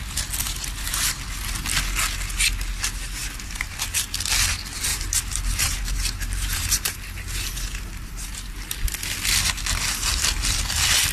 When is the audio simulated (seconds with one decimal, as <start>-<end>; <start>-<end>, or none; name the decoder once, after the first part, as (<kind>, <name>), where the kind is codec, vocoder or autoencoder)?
3.2-4.0 (vocoder, BigVGAN v2); 4.9-8.9